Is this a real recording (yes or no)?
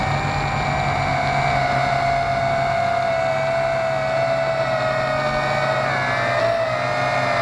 yes